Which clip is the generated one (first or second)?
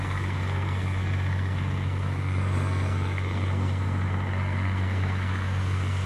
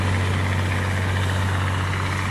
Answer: first